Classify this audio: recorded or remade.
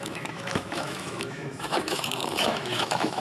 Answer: remade